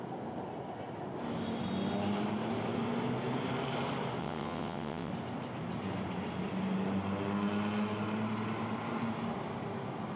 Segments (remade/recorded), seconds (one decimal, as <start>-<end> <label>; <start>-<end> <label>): 0.0-4.2 recorded; 4.2-5.1 remade; 5.1-10.2 recorded

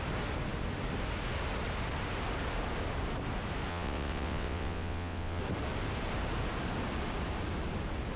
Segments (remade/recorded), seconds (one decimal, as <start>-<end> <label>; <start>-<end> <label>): 0.0-3.7 recorded; 3.7-5.4 remade; 5.4-8.2 recorded